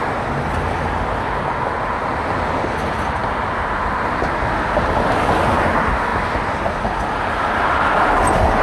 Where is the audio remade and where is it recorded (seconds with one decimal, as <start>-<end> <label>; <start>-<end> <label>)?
0.0-8.6 recorded